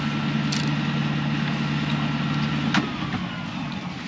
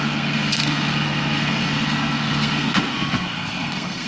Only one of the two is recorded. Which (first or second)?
first